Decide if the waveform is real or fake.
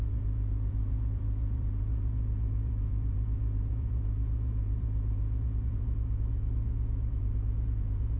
fake